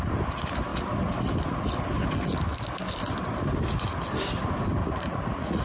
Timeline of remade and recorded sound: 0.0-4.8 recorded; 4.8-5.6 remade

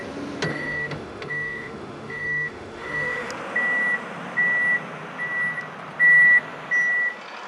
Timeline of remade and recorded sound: 0.0-0.5 recorded; 0.5-3.3 remade; 3.3-7.5 recorded